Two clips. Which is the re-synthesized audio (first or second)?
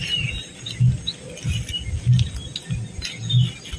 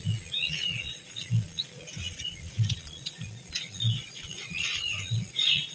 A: second